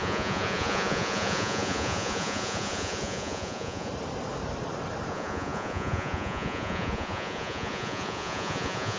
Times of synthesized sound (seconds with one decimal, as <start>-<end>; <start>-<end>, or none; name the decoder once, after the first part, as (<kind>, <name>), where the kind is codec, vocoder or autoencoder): 0.0-3.9 (vocoder, Vocos); 5.1-9.0